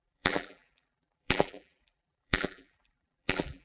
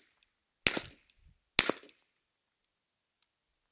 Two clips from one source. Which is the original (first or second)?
second